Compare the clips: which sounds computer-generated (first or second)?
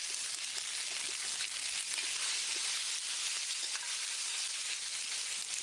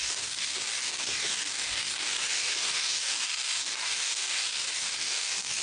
second